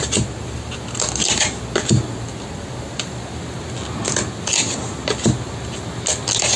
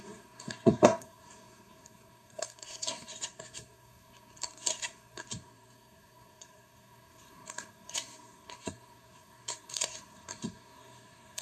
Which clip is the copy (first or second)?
second